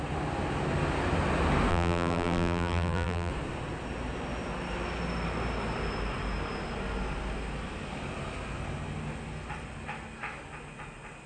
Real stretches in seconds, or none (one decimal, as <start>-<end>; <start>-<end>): 0.0-1.7; 3.3-11.3